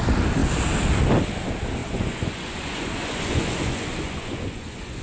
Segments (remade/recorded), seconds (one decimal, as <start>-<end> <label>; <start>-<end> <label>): 0.0-1.8 recorded; 1.8-5.0 remade